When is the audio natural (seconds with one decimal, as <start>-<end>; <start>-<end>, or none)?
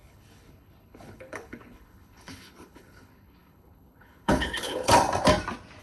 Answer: 4.9-5.8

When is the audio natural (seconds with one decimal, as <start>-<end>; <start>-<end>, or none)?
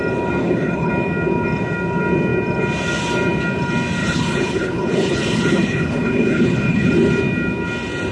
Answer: 0.0-0.4; 0.9-4.0; 6.9-8.1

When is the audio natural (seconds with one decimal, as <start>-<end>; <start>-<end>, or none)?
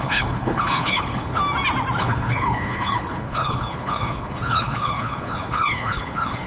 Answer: 1.4-2.0